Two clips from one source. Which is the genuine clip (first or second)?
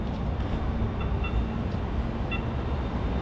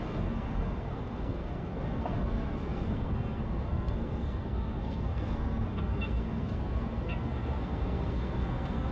first